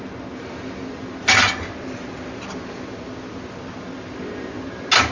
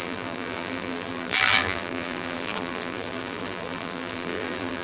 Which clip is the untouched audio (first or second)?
first